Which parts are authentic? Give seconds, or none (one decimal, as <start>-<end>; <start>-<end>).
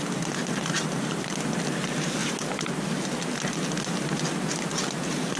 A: 0.0-5.4